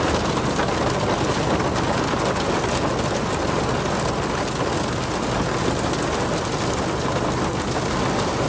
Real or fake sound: real